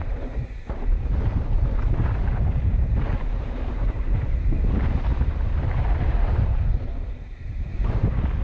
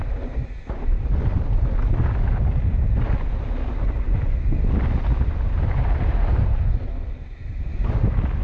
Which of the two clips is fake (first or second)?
first